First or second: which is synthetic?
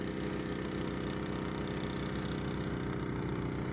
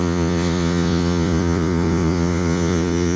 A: second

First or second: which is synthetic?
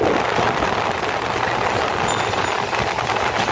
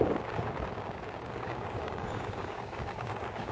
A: second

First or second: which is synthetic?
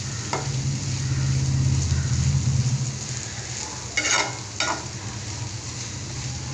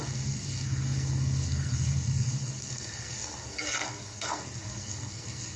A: second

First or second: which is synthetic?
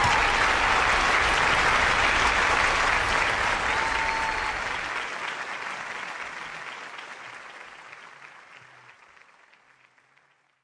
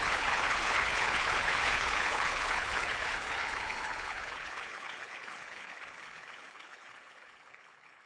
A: second